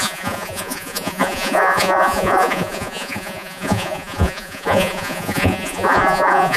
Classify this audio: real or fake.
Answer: fake